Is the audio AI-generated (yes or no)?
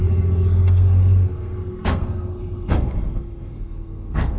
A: yes